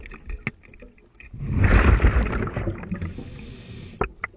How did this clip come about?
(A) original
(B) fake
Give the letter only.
A